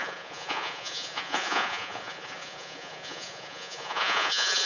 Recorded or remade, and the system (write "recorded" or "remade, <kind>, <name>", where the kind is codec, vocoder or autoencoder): remade, vocoder, Vocos